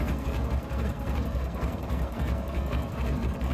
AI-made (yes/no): yes